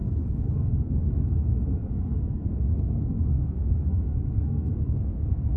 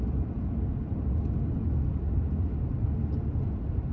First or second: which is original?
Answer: second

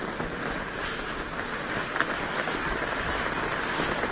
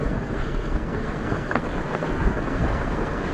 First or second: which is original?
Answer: first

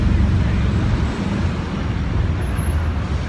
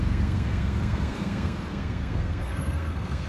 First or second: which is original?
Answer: first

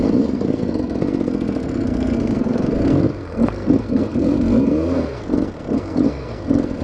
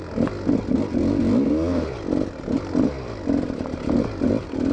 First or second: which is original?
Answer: second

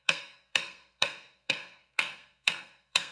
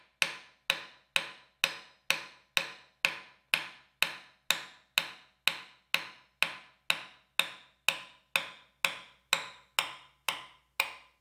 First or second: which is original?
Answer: second